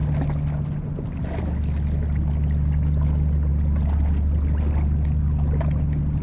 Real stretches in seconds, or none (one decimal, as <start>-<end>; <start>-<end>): 0.0-6.2